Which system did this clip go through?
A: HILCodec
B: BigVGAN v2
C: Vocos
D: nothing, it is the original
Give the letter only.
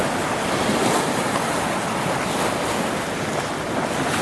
D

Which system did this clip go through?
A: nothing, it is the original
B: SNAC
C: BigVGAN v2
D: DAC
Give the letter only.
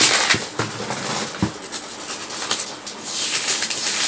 A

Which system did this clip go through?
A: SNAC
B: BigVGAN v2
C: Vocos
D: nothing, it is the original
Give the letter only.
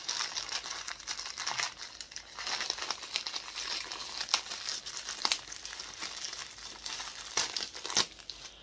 D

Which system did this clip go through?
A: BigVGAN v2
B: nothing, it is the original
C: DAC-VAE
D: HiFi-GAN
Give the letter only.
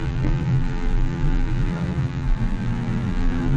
A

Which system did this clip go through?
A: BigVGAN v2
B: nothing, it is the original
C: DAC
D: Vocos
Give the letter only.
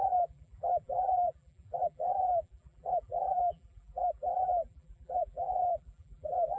A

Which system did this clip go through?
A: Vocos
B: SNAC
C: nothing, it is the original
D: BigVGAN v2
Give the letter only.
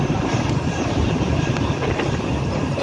D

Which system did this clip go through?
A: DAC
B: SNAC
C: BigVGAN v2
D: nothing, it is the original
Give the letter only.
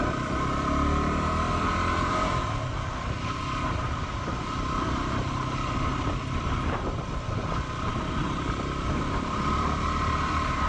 C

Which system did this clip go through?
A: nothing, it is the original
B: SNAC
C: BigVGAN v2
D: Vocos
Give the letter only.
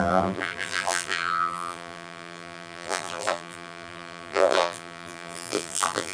C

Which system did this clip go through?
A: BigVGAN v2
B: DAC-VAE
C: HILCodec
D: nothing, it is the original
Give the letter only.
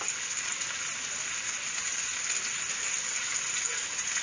D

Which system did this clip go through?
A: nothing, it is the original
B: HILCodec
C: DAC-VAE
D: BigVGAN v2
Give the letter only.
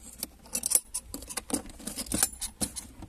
A